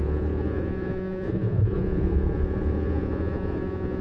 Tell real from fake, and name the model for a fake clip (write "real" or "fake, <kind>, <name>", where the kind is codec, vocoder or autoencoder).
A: fake, vocoder, Vocos